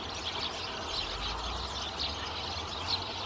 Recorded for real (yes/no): yes